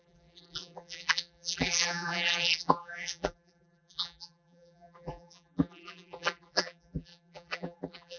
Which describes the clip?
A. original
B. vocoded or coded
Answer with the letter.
B